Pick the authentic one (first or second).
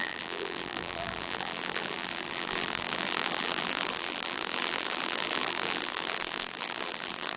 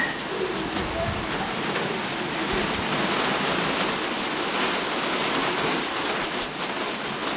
second